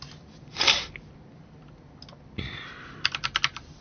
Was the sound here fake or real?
real